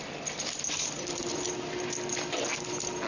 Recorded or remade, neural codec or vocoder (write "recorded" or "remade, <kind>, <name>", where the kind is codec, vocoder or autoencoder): recorded